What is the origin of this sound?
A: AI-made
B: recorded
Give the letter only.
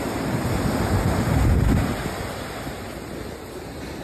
B